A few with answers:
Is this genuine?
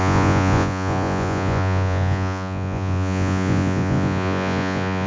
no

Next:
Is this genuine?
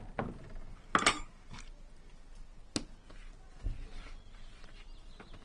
yes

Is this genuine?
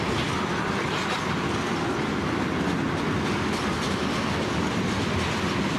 yes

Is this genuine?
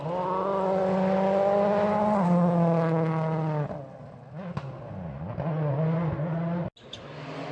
yes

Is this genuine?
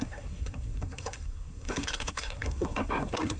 no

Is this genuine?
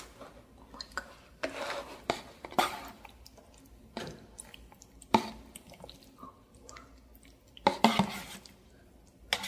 yes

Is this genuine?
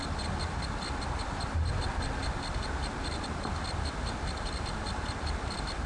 yes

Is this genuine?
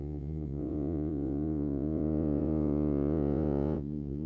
no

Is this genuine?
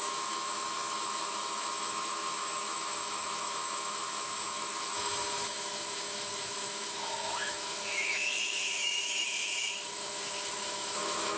no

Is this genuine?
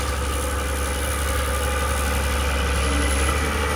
yes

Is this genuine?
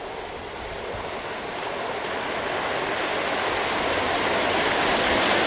yes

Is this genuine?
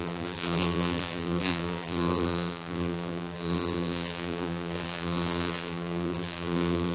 no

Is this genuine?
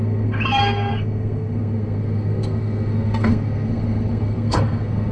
no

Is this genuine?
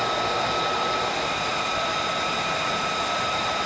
yes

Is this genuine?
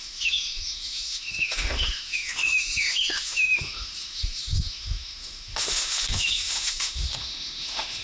no